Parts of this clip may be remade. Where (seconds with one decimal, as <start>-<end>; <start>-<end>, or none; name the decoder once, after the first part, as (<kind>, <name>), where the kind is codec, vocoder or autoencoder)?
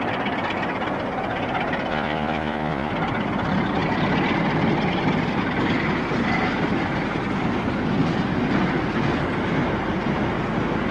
1.9-2.9 (vocoder, Vocos)